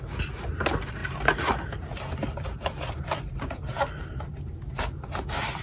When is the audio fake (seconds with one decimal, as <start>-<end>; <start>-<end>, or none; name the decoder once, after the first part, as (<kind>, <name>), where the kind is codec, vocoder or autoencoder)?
1.0-4.4 (vocoder, BigVGAN v2)